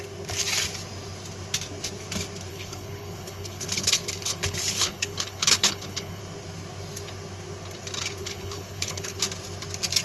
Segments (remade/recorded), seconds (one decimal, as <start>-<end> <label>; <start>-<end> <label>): 0.0-2.5 recorded; 2.5-6.2 remade; 6.2-8.2 recorded; 8.2-9.2 remade; 9.2-10.0 recorded